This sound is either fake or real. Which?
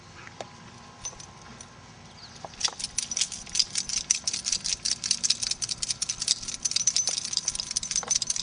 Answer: fake